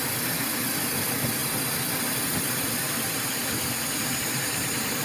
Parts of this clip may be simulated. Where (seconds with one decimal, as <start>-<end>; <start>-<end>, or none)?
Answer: none